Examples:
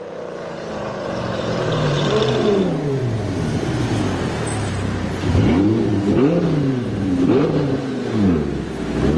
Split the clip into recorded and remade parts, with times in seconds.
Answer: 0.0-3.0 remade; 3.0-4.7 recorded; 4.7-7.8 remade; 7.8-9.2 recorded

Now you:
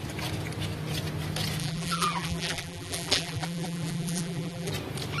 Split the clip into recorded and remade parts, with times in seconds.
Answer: 0.0-1.6 recorded; 1.6-4.7 remade; 4.7-5.2 recorded

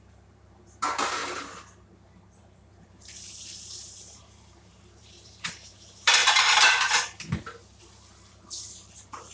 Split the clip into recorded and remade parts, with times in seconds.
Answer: 0.0-1.2 remade; 1.2-2.4 recorded; 2.4-6.2 remade; 6.2-7.8 recorded; 7.8-9.3 remade

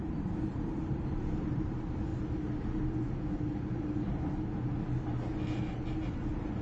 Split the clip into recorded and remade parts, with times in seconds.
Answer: 0.0-2.1 remade; 2.1-6.1 recorded; 6.1-6.6 remade

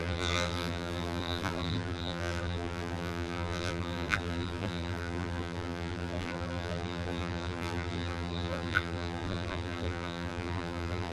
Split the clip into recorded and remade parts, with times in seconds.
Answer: 0.0-11.1 remade

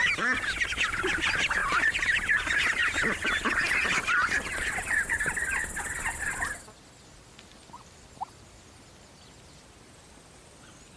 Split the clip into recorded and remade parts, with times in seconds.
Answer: 0.0-1.6 recorded; 1.6-2.2 remade; 2.2-11.0 recorded